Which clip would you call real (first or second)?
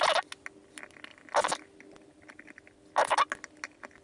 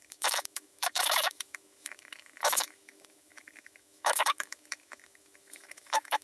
first